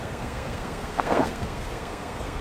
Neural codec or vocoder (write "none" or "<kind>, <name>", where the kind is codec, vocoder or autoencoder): codec, SNAC